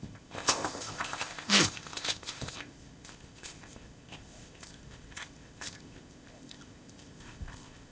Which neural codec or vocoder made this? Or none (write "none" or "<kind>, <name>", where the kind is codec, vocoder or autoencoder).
codec, ZipCodec